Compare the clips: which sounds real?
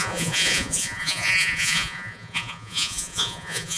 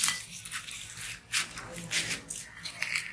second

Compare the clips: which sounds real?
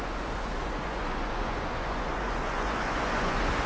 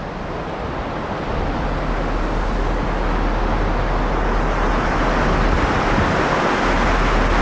second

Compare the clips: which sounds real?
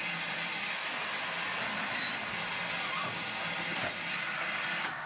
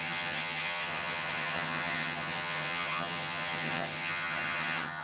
first